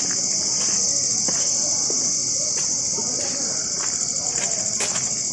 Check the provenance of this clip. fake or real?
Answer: real